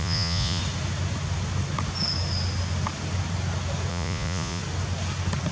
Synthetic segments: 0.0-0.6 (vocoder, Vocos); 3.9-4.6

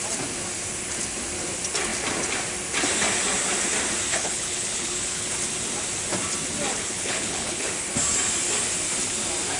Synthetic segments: 4.1-5.3 (codec, HILCodec); 6.7-7.7

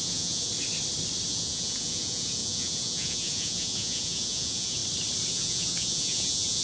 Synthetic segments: 0.0-0.5 (vocoder, Vocos); 1.3-4.8; 5.3-6.6

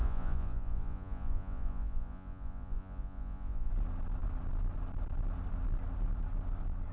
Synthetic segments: 0.0-3.7 (vocoder, Vocos)

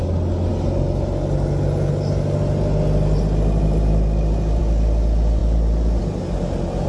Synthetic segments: none